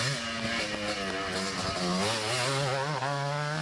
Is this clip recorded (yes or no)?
yes